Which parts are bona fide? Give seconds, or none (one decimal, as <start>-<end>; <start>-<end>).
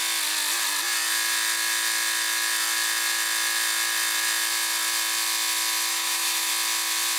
0.0-5.9; 6.5-7.2